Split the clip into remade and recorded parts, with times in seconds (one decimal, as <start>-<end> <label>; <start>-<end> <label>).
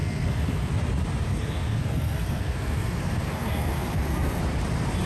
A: 0.0-0.7 remade; 0.7-1.3 recorded; 1.3-4.4 remade; 4.4-5.1 recorded